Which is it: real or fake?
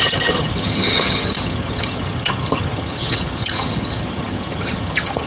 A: fake